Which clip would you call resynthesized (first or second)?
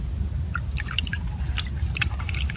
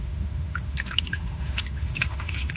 second